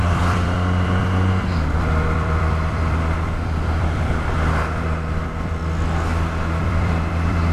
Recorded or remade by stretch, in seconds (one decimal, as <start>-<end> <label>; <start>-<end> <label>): 0.0-5.6 remade; 5.6-6.6 recorded; 6.6-7.5 remade